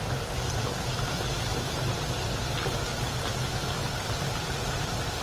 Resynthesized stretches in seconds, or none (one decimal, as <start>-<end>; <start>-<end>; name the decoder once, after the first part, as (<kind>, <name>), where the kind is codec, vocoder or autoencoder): 3.8-4.6 (vocoder, BigVGAN v2)